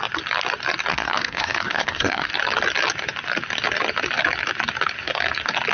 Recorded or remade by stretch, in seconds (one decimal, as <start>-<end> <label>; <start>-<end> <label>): 0.0-0.9 recorded; 0.9-2.3 remade; 2.3-5.7 recorded

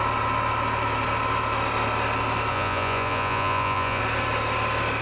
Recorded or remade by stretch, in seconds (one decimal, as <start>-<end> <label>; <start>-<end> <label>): 0.0-2.5 recorded; 2.5-4.0 remade; 4.0-5.0 recorded

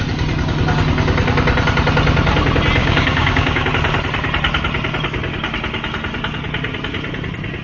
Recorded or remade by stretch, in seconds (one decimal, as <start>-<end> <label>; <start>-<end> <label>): 0.0-2.8 recorded; 2.8-3.7 remade; 3.7-7.6 recorded

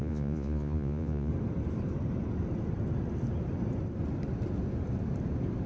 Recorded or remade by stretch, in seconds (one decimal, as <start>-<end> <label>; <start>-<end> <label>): 0.0-1.3 remade; 1.3-5.7 recorded

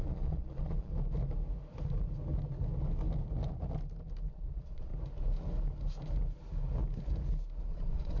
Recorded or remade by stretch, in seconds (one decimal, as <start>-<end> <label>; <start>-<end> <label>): 0.0-0.9 remade; 0.9-4.3 recorded; 4.3-4.9 remade; 4.9-7.7 recorded; 7.7-8.2 remade

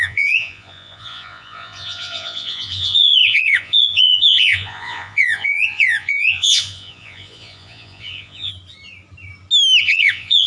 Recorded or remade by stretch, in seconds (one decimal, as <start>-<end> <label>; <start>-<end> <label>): 0.0-8.5 remade; 8.5-9.8 recorded; 9.8-10.5 remade

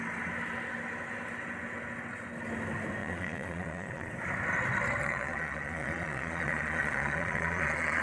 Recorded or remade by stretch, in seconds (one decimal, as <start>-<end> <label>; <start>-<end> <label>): 0.0-3.0 recorded; 3.0-4.1 remade; 4.1-5.0 recorded; 5.0-8.0 remade

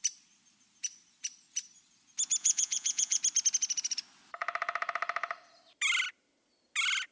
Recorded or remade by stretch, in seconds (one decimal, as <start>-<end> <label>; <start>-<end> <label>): 0.0-2.4 recorded; 2.4-3.2 remade; 3.2-7.1 recorded